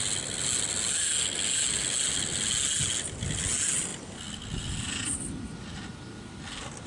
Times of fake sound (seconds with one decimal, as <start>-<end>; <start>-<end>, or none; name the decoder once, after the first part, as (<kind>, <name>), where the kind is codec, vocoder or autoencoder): none